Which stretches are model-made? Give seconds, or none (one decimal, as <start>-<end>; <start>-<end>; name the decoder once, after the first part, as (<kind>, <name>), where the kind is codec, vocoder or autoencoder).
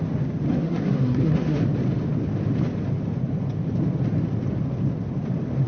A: 0.5-1.6 (codec, SNAC)